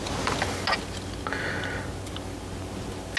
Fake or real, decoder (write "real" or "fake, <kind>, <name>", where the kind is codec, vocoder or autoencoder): real